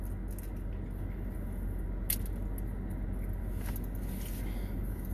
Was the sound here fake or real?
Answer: real